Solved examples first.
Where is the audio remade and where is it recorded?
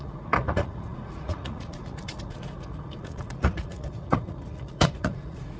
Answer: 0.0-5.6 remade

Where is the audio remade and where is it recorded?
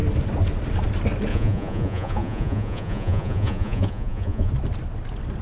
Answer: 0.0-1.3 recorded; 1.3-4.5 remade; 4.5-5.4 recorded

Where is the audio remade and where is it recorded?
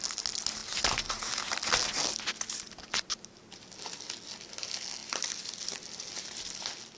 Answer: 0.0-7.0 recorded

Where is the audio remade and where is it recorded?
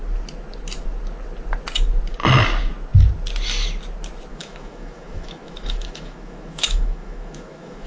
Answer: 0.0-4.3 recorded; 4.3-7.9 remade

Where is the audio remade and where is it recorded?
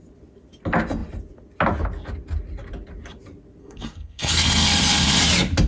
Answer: 0.0-3.6 recorded; 3.6-5.2 remade; 5.2-5.7 recorded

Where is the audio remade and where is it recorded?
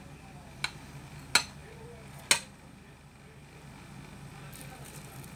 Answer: 0.0-5.4 recorded